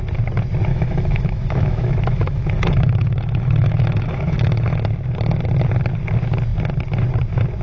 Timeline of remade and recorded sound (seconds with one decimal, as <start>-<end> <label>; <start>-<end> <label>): 0.0-0.7 recorded; 0.7-4.7 remade; 4.7-7.6 recorded